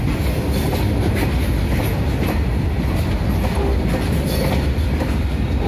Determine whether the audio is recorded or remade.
recorded